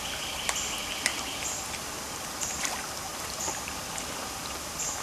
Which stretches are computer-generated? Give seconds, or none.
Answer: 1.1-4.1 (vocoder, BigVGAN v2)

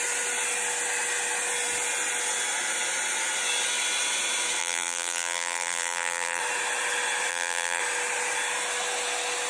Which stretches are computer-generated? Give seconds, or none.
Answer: 4.6-6.4 (vocoder, BigVGAN v2); 7.3-7.8

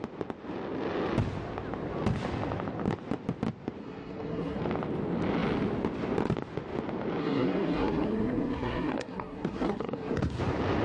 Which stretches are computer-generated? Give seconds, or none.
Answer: 3.8-4.6 (codec, SNAC); 7.2-10.4

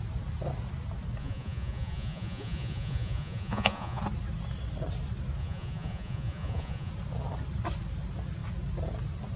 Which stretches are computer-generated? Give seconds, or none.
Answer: 1.2-4.0 (vocoder, Vocos); 5.4-6.9

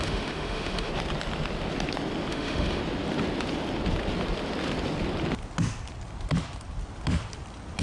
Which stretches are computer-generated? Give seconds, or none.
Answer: 0.0-0.9 (autoencoder, DAC-VAE); 2.3-2.8

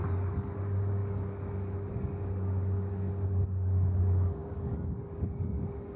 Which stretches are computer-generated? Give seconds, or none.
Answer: 0.0-6.0 (codec, DAC)

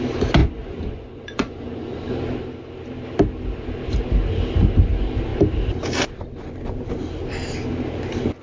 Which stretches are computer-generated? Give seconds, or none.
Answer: 0.4-2.1 (vocoder, Vocos)